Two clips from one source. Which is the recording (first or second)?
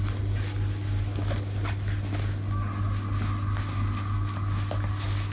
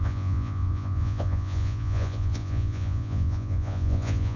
first